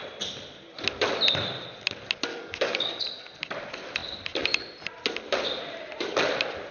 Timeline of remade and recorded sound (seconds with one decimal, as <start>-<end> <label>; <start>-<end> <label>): 0.0-2.3 recorded; 2.3-3.0 remade; 3.0-6.7 recorded